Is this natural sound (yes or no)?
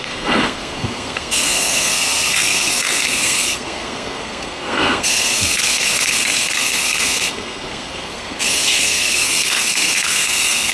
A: no